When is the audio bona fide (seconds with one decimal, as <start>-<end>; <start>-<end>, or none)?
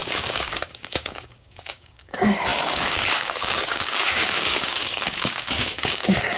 none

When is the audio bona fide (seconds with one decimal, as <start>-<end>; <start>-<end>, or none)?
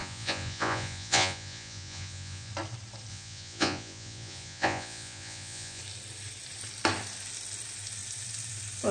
2.5-3.1; 5.8-8.9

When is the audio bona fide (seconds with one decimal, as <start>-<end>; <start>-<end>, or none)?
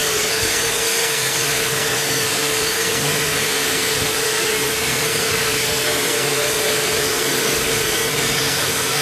none